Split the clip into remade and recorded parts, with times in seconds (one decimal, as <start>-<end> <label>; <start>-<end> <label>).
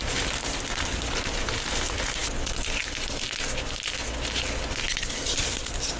0.0-6.0 recorded